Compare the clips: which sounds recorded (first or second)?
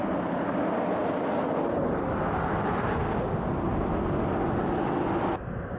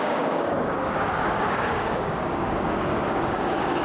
first